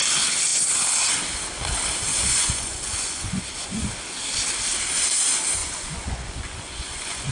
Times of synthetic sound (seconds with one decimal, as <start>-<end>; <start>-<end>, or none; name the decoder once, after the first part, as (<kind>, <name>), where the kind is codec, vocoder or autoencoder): 2.1-3.9 (vocoder, Vocos); 5.6-7.3